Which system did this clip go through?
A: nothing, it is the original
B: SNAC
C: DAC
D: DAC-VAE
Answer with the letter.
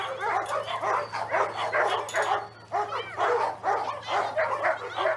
A